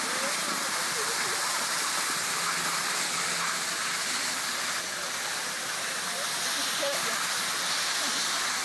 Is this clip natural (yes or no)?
yes